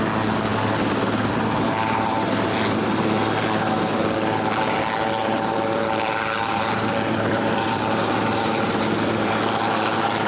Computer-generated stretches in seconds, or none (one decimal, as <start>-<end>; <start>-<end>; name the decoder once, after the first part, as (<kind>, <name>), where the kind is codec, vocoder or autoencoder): 0.5-2.6 (vocoder, BigVGAN v2); 5.2-9.3